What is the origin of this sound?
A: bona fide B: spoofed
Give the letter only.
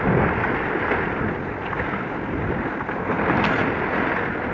A